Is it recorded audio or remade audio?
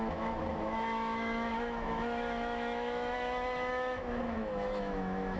remade